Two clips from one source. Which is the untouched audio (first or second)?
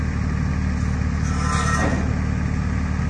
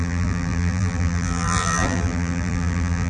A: first